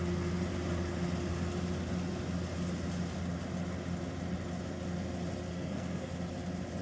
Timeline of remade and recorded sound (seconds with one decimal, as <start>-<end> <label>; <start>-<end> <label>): 0.0-5.5 recorded; 5.5-6.1 remade; 6.1-6.8 recorded